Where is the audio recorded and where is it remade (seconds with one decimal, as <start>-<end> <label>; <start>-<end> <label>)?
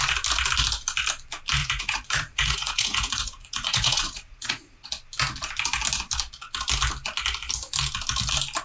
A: 0.0-1.6 recorded; 1.6-4.9 remade; 4.9-8.6 recorded